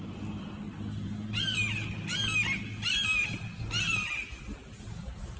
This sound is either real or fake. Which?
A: real